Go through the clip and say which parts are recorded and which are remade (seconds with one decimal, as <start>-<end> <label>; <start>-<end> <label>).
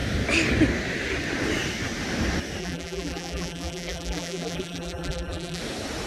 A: 0.0-2.6 recorded; 2.6-5.6 remade; 5.6-6.1 recorded